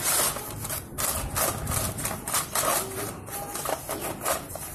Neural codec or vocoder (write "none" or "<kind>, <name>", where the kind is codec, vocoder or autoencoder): none